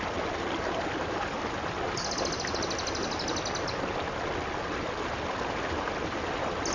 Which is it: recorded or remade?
recorded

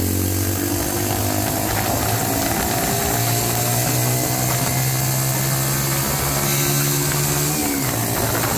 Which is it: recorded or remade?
recorded